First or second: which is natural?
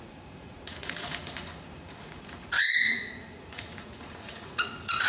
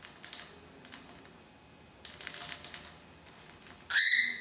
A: second